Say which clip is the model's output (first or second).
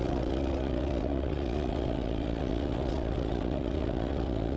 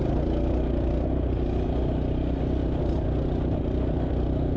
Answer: first